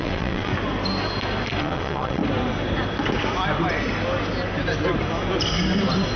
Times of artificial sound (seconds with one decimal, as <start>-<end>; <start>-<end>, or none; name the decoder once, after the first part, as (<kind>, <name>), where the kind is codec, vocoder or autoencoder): 0.0-0.5 (vocoder, WaveNeXt); 1.6-2.2